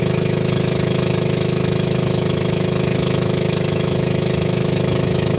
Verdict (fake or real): fake